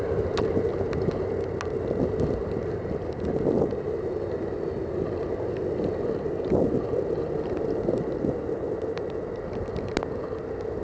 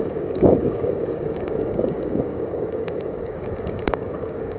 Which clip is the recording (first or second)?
first